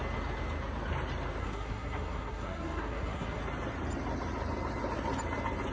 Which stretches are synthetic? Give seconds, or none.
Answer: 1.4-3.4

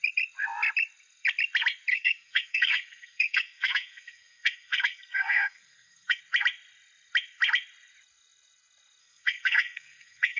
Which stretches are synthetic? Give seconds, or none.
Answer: 1.9-6.2; 9.0-10.4

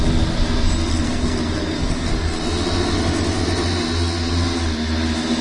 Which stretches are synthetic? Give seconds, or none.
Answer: 0.9-2.1

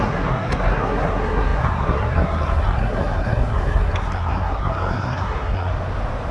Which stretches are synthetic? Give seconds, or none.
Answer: 0.0-5.7

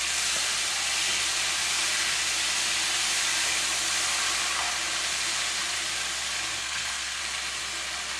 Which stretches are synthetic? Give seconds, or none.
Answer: 6.6-7.2

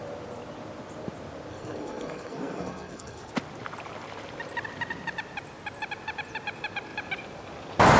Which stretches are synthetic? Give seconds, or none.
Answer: 1.5-3.3